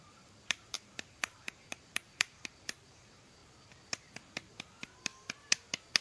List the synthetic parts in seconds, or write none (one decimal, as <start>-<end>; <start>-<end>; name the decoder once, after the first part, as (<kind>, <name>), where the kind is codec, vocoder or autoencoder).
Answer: 0.0-3.4 (vocoder, BigVGAN v2); 4.3-5.1